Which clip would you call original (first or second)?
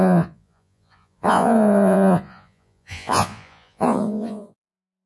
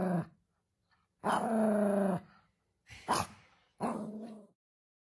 second